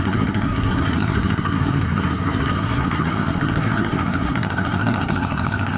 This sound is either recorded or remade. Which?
remade